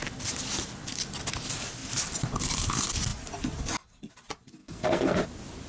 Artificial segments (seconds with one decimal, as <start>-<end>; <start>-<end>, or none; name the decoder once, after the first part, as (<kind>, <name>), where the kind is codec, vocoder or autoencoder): 4.6-5.2 (codec, SNAC)